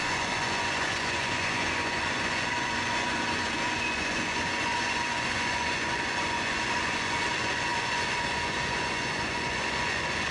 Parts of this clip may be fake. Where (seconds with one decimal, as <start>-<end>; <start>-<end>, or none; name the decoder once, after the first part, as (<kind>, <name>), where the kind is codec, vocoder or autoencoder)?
0.0-10.3 (vocoder, Vocos)